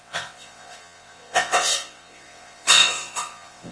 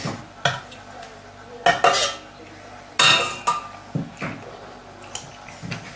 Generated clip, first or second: first